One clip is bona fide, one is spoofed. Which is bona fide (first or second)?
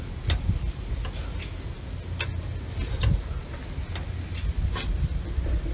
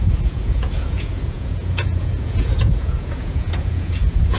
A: first